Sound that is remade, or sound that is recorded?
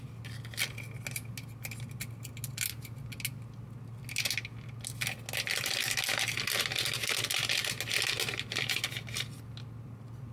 recorded